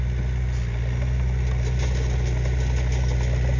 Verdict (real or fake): real